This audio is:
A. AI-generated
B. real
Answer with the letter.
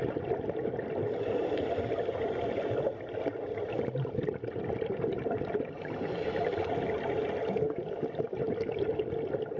B